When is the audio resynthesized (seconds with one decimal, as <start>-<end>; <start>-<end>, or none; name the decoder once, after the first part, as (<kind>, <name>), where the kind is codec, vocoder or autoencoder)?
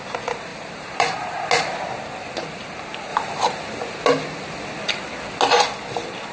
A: 0.5-1.4 (vocoder, BigVGAN v2)